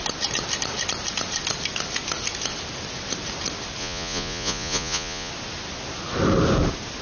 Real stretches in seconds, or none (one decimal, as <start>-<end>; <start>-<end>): 0.0-3.8; 5.3-7.0